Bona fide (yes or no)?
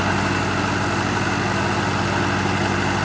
yes